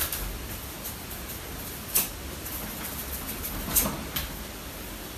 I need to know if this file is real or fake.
real